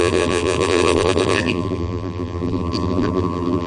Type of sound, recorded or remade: remade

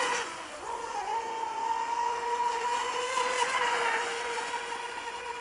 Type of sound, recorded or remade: remade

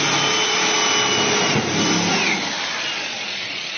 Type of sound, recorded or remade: recorded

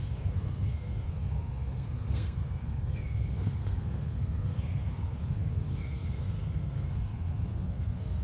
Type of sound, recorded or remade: remade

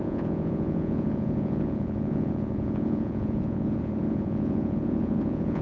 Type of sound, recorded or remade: remade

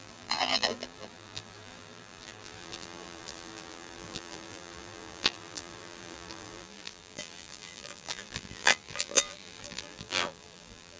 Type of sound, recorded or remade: remade